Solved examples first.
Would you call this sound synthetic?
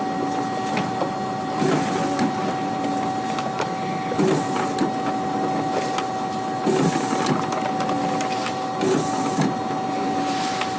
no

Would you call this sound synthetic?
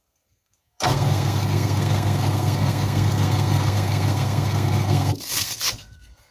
yes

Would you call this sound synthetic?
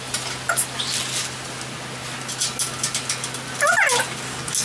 no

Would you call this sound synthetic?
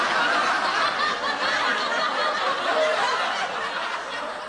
no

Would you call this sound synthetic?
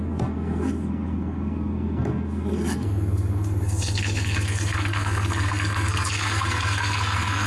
yes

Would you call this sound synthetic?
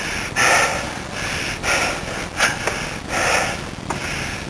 no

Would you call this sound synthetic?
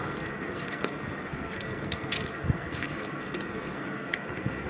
yes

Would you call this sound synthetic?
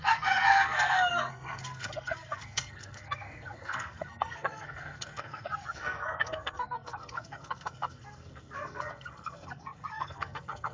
yes